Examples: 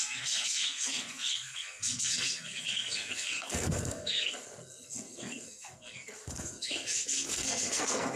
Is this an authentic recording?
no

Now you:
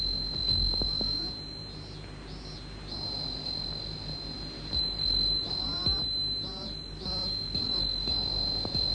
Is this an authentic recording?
yes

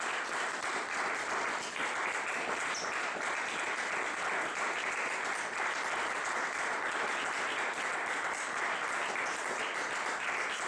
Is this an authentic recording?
yes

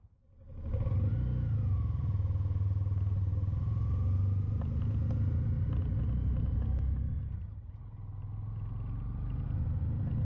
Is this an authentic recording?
yes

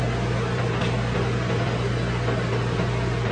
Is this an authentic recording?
yes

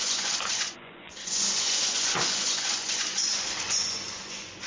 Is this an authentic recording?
no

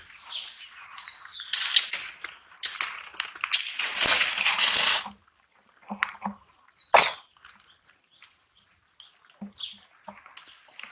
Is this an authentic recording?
yes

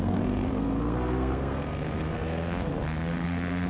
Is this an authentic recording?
no